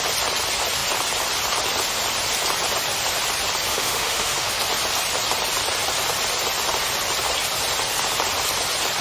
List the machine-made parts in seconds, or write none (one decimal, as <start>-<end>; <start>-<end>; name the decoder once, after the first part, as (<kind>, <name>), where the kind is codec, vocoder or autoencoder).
3.7-4.6 (autoencoder, DAC-VAE)

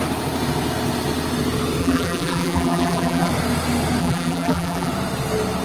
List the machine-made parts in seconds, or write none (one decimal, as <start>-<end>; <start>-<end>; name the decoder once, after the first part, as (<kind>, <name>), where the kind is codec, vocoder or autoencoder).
1.8-3.3 (vocoder, BigVGAN v2); 4.0-4.9

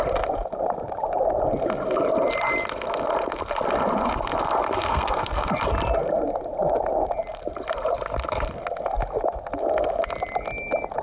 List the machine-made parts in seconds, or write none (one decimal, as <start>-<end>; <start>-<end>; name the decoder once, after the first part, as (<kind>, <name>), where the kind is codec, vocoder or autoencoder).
4.9-5.5 (codec, SNAC)

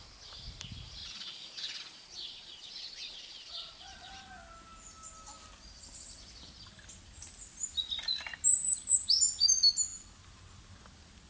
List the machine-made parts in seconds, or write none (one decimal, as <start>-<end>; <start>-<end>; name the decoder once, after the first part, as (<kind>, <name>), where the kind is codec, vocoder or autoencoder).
1.0-4.1 (vocoder, Vocos)

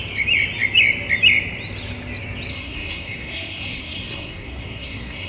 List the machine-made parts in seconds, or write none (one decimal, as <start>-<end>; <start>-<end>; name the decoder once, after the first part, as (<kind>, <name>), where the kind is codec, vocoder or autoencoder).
2.5-5.3 (codec, SNAC)

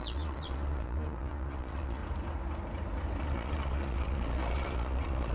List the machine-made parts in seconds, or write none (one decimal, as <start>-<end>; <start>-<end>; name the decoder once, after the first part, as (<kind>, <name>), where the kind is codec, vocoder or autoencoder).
0.0-2.0 (vocoder, Vocos); 3.2-5.3

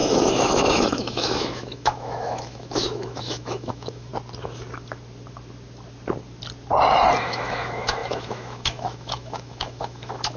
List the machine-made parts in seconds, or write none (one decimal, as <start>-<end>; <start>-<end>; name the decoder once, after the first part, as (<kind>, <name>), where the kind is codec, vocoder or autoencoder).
0.0-4.1 (autoencoder, DAC-VAE); 7.2-10.4

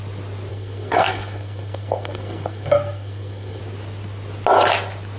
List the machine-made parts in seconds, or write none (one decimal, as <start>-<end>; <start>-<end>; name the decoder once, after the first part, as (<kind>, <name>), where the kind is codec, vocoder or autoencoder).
0.5-3.6 (codec, SNAC)